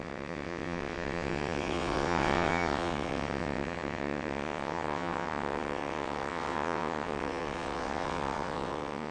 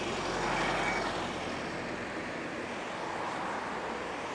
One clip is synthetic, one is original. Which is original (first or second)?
second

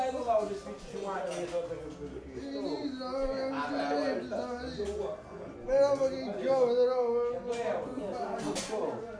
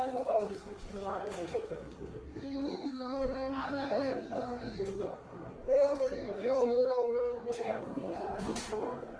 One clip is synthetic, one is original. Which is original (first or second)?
first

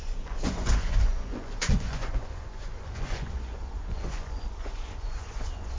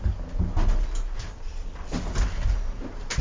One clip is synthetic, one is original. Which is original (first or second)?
second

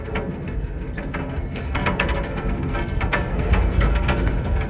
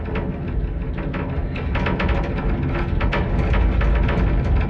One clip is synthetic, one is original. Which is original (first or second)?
second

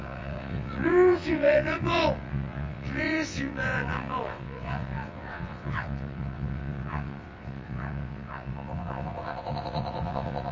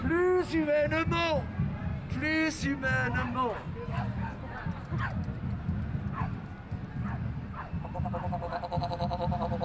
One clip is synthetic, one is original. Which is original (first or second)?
second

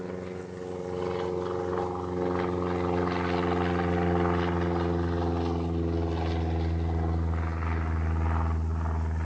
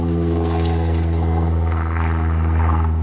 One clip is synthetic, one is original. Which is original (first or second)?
first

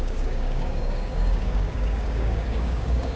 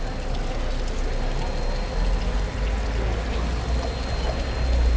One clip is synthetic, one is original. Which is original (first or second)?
second